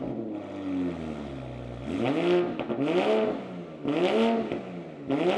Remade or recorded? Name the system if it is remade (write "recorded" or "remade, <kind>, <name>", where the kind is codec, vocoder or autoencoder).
recorded